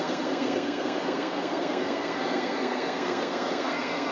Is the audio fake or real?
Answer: fake